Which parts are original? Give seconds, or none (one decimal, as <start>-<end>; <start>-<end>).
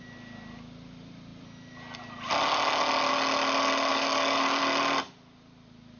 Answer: 0.0-3.9; 4.6-6.0